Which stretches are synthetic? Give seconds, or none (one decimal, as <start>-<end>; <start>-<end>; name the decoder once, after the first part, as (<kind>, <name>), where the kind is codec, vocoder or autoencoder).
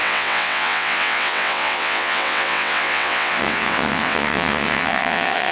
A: 0.0-5.5 (vocoder, WaveNeXt)